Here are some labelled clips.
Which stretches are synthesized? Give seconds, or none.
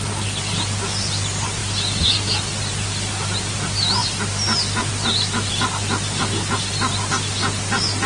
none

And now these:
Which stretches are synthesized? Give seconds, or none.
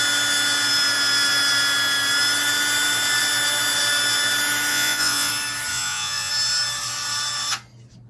4.7-5.3 (vocoder, Vocos); 5.7-6.3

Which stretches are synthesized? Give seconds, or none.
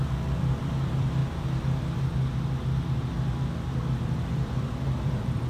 0.0-1.2 (vocoder, BigVGAN v2); 4.0-5.5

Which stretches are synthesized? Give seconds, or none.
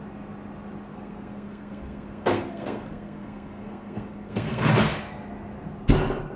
0.9-4.7 (codec, SNAC)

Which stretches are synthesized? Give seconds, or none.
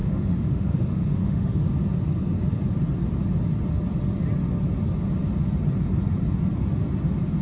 0.0-1.6 (autoencoder, DAC-VAE)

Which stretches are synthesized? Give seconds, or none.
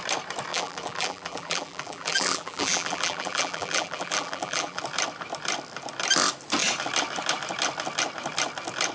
0.5-4.8 (vocoder, BigVGAN v2)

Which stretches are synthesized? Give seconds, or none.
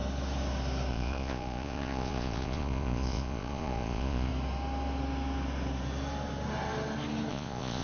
0.9-4.3 (vocoder, Vocos); 7.3-7.8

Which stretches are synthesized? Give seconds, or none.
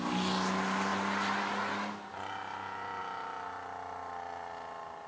none